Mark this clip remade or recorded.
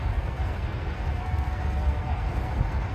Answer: remade